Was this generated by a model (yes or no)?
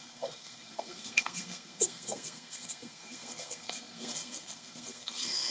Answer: yes